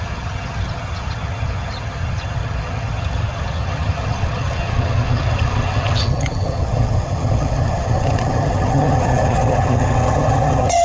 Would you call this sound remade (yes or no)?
yes